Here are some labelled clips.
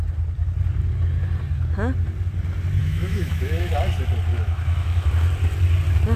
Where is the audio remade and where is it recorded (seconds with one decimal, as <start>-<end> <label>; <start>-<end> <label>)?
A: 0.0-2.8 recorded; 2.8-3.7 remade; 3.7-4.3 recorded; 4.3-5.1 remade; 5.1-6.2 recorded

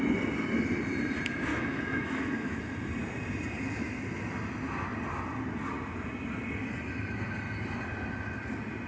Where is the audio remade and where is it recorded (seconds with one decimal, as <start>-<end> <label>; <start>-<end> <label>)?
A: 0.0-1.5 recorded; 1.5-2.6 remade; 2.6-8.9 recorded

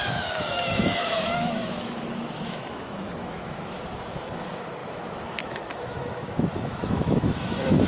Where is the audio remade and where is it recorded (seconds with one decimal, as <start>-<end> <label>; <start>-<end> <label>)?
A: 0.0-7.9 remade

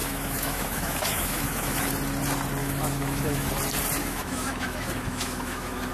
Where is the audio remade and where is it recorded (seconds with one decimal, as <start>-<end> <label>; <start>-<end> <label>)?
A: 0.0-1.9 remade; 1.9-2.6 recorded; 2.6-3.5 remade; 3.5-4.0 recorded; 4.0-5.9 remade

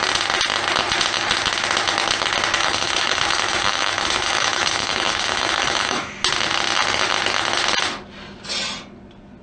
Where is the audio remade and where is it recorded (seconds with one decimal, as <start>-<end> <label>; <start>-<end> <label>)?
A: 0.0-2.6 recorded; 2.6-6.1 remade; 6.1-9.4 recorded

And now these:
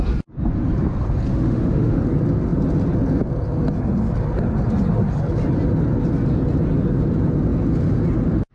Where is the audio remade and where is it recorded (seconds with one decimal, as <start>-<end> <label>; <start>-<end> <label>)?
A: 0.0-1.3 recorded; 1.3-2.0 remade; 2.0-8.5 recorded